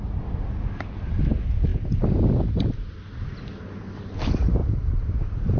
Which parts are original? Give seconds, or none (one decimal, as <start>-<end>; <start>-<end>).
0.0-5.6